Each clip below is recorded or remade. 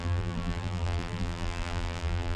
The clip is remade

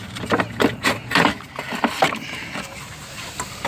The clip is remade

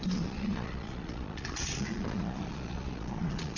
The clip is remade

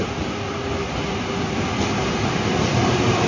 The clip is recorded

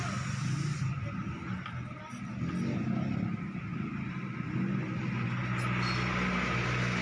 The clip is recorded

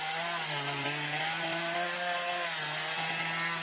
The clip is recorded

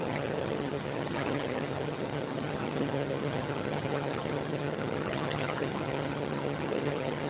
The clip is remade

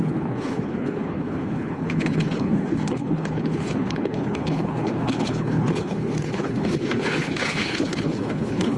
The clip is remade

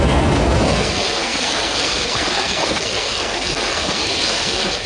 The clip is remade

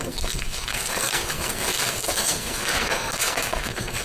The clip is remade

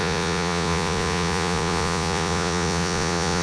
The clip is remade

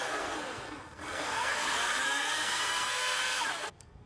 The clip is remade